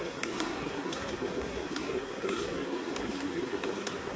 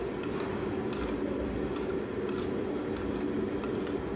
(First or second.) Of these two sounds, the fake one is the first